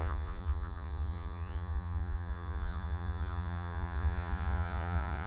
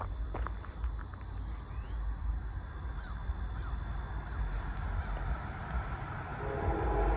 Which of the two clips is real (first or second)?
second